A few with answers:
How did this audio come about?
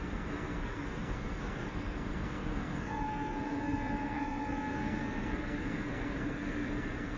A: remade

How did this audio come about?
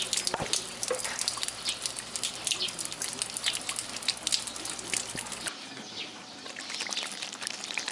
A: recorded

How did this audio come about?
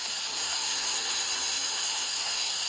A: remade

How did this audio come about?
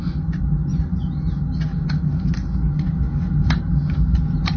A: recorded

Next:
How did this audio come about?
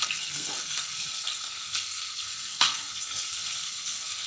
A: remade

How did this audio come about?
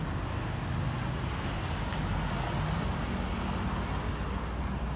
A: recorded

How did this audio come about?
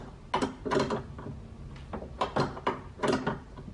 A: recorded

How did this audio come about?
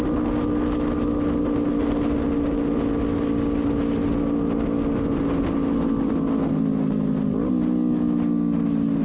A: recorded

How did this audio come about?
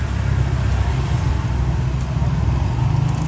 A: recorded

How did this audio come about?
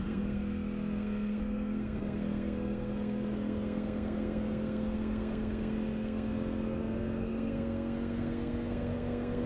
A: remade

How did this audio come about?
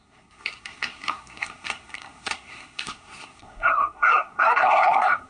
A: remade